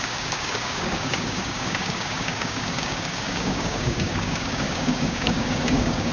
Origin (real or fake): fake